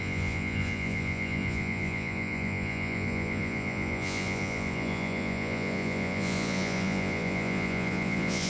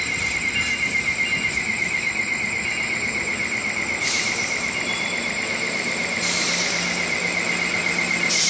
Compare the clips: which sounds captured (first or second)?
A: second